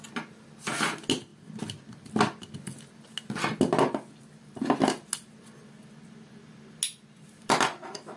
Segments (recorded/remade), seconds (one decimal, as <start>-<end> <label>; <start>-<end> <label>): 0.0-8.2 recorded

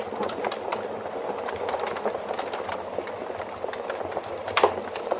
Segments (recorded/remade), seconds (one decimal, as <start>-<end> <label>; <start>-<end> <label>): 0.0-4.4 recorded; 4.4-5.2 remade

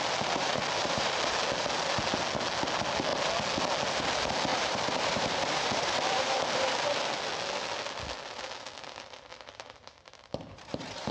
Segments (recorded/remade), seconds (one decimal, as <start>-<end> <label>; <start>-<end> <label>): 0.0-0.4 recorded; 0.4-1.3 remade; 1.3-4.5 recorded; 4.5-7.0 remade; 7.0-9.3 recorded; 9.3-11.1 remade